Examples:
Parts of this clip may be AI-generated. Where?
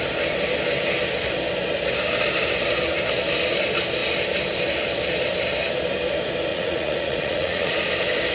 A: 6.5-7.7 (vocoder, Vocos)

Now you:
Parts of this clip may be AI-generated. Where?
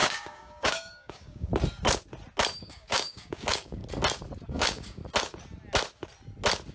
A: 0.0-1.5 (codec, DAC); 2.6-3.8; 4.5-5.0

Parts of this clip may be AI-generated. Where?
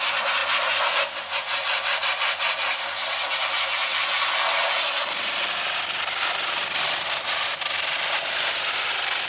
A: none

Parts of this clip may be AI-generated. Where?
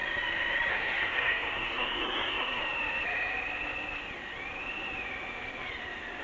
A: 0.7-2.6 (codec, SNAC)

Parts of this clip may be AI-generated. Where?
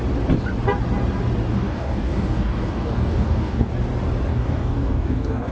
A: 1.5-3.7 (codec, DAC); 4.3-5.5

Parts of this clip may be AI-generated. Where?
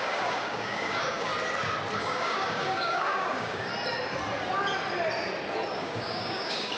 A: 0.0-1.3 (codec, DAC); 2.0-3.7; 5.8-6.8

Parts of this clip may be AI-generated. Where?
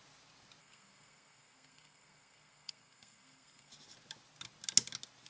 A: 0.6-3.7 (codec, SNAC)